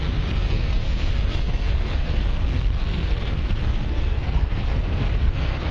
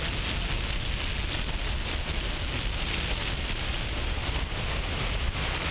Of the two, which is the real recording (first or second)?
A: second